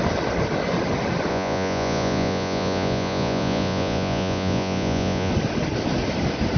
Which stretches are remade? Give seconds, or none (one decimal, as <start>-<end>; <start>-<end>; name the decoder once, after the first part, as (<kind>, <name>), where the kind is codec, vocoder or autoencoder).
1.3-5.3 (vocoder, Vocos)